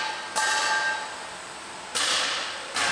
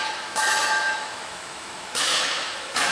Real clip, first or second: first